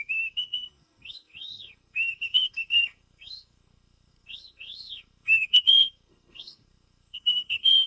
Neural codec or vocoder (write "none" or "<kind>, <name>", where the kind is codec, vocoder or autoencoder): codec, SNAC